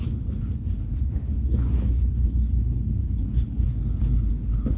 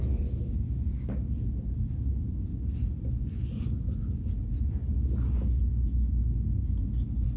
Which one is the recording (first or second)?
second